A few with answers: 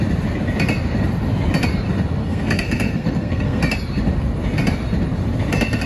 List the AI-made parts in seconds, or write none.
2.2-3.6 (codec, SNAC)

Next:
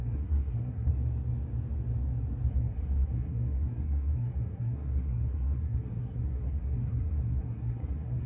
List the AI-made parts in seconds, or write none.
0.0-0.9 (codec, SNAC); 2.5-8.3